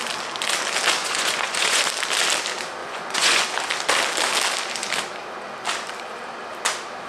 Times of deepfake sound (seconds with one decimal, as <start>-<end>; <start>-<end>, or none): 1.0-1.8; 2.8-3.4